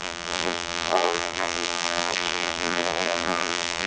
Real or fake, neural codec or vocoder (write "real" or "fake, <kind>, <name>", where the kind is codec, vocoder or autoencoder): fake, vocoder, BigVGAN v2